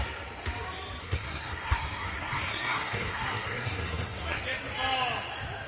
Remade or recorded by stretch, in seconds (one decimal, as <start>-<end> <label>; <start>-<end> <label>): 0.0-1.0 recorded; 1.0-4.4 remade; 4.4-5.7 recorded